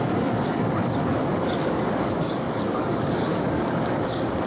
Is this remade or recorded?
remade